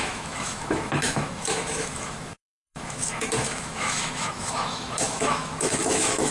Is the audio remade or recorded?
remade